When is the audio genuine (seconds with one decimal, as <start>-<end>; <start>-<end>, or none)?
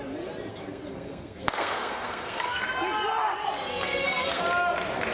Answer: 0.0-0.5; 2.6-3.7; 4.4-5.1